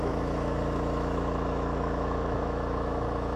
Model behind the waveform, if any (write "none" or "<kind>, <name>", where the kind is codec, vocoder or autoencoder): autoencoder, DAC-VAE